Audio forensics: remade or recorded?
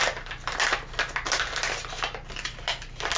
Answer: recorded